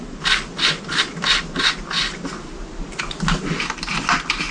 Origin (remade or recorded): recorded